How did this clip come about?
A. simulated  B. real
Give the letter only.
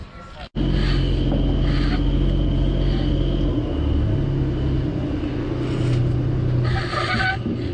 B